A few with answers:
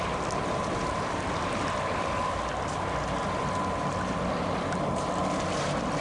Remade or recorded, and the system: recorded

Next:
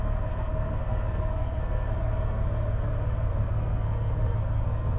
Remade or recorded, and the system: remade, codec, SNAC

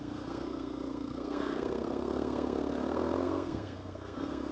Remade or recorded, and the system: remade, codec, SNAC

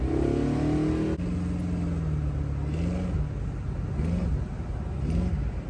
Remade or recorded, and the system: recorded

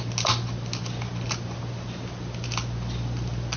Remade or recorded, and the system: recorded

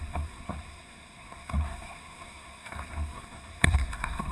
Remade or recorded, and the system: remade, codec, SNAC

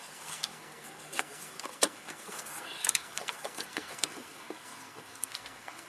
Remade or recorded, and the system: remade, codec, SNAC